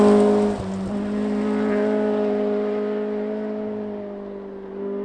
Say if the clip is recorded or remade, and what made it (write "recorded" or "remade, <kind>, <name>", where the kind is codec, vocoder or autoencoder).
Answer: recorded